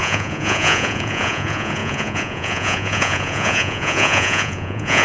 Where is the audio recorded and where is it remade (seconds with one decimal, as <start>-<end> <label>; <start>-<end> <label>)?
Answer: 0.0-5.0 remade